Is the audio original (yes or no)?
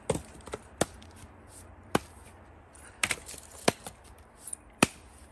no